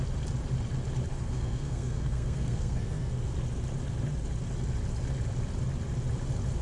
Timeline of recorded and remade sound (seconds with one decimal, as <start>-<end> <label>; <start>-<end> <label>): 0.0-1.1 recorded; 1.1-3.1 remade; 3.1-6.6 recorded